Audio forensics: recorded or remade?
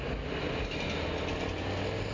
recorded